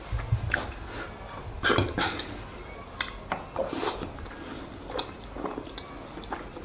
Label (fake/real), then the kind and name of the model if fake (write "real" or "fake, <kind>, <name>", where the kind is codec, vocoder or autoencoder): real